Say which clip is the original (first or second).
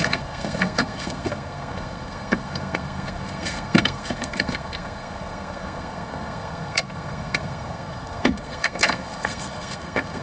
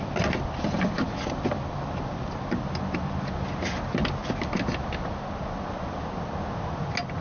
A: second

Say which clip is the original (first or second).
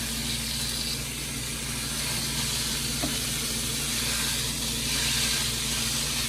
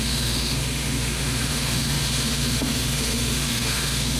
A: first